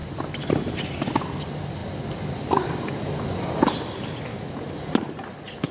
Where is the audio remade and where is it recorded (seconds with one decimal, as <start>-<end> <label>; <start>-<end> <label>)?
0.0-1.8 recorded; 1.8-5.2 remade; 5.2-5.7 recorded